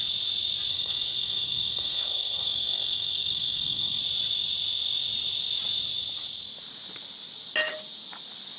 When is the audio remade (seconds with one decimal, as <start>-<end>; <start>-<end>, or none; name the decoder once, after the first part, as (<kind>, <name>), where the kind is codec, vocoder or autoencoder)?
0.7-4.0 (codec, SNAC)